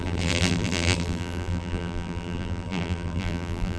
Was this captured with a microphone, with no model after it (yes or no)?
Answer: no